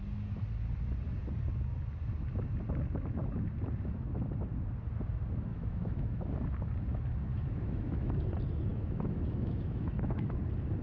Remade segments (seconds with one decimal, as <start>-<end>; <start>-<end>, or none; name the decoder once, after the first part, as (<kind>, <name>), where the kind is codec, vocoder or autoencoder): 5.5-6.3 (autoencoder, DAC-VAE); 7.3-8.2; 8.7-10.4